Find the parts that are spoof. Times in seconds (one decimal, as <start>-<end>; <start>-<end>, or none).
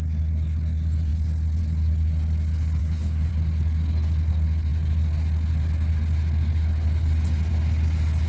2.8-3.3